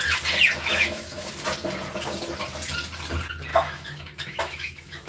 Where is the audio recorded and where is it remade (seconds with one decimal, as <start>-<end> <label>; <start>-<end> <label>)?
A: 0.0-0.7 recorded; 0.7-1.3 remade; 1.3-3.5 recorded; 3.5-5.1 remade